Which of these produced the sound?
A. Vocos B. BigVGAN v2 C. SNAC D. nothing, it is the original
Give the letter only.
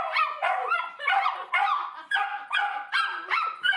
A